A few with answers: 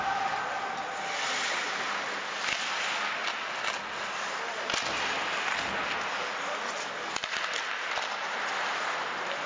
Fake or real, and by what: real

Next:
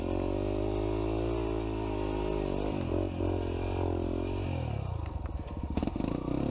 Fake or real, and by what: real